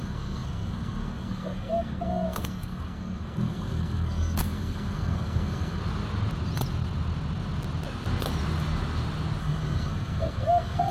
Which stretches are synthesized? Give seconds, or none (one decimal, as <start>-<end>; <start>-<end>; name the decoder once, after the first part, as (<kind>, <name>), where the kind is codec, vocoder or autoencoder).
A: 0.0-5.8 (codec, SNAC); 9.4-10.9